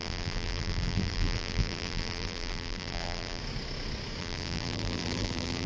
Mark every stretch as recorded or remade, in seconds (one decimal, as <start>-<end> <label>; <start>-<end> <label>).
0.0-3.4 remade; 3.4-4.2 recorded; 4.2-5.7 remade